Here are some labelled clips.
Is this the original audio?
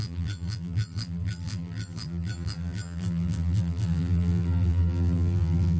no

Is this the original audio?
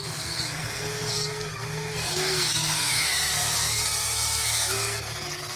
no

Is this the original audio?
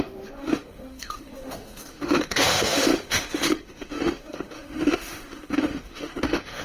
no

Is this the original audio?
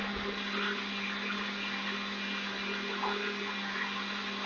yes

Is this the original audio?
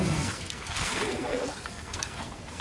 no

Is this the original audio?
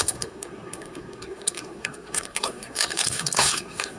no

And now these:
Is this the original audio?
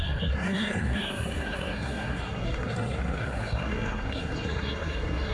no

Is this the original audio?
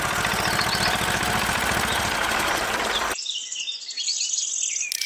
yes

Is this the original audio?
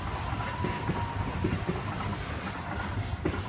yes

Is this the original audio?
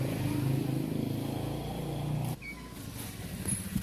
yes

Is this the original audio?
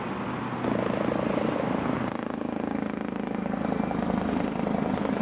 yes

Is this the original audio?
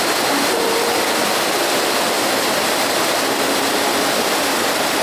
no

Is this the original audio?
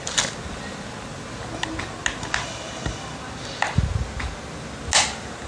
yes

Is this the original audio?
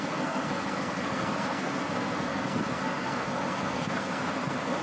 no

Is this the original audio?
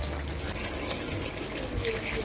yes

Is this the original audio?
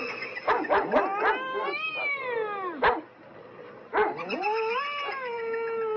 yes